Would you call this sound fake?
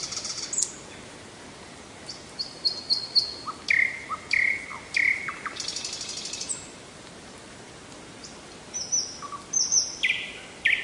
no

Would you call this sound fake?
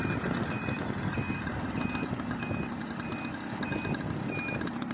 no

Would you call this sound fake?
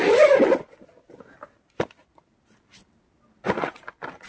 no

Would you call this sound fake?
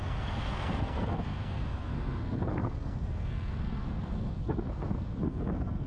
yes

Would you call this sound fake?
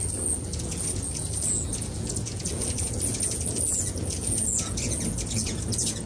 yes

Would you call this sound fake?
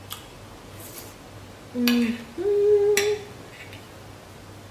no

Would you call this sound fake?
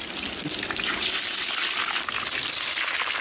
no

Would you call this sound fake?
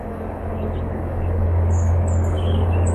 yes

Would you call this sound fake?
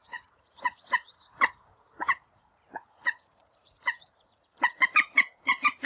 yes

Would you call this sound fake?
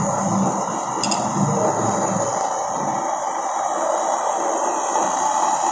no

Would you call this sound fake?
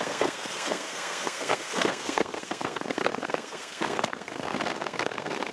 yes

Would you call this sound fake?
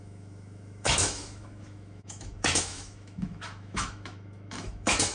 yes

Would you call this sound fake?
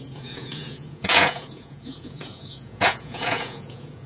yes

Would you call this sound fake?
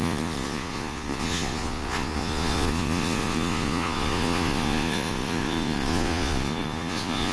yes